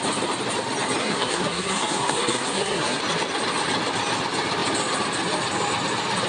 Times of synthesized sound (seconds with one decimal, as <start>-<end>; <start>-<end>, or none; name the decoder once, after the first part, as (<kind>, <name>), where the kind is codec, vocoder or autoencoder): 1.0-3.0 (codec, SNAC)